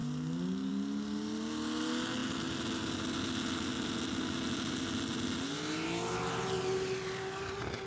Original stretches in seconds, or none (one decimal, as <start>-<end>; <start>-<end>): 0.0-7.9